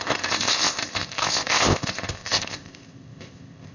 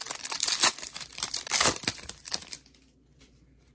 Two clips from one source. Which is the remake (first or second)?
first